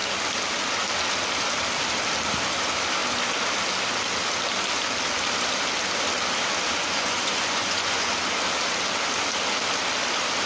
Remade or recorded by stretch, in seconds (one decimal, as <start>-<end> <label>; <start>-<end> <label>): 0.0-6.8 recorded; 6.8-8.1 remade; 8.1-10.5 recorded